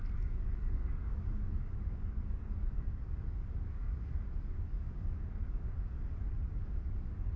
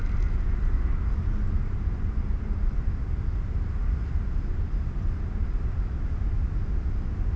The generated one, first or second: first